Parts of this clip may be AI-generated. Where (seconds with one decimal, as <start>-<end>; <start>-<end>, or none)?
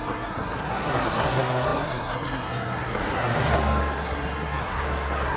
0.0-5.4